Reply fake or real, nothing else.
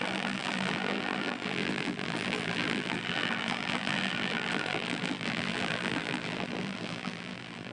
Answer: fake